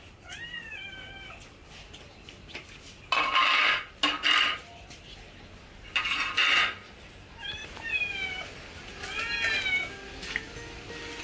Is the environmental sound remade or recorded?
recorded